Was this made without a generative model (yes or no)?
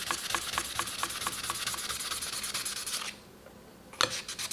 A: yes